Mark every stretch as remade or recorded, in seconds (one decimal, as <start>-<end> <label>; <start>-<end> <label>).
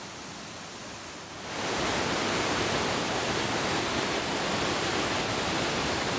0.0-6.2 recorded